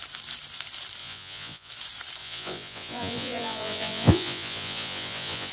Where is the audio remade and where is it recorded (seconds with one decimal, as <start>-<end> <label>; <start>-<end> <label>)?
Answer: 0.0-1.0 recorded; 1.0-1.7 remade; 1.7-2.2 recorded; 2.2-5.5 remade